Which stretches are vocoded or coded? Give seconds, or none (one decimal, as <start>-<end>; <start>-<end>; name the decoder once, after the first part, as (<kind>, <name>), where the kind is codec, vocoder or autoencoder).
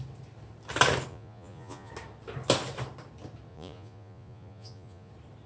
1.1-1.9 (vocoder, Vocos); 3.5-5.1